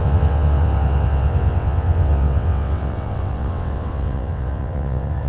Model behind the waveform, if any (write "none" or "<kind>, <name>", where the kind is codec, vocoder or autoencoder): vocoder, WaveNeXt